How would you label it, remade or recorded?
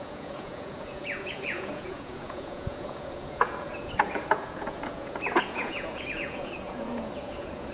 remade